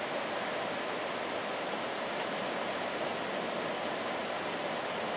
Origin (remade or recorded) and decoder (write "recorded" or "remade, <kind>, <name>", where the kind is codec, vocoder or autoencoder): recorded